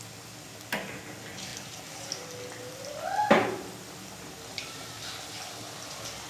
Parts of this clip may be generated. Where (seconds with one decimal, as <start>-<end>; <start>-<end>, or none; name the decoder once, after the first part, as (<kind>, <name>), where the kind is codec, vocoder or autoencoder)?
none